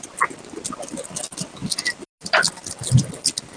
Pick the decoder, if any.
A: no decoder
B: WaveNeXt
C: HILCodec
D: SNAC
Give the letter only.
A